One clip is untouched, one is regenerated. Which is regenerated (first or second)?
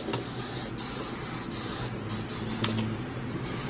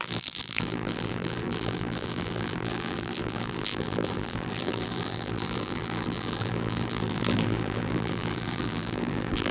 second